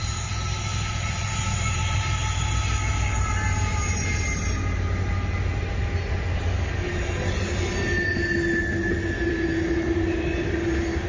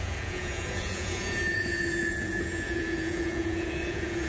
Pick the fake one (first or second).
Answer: second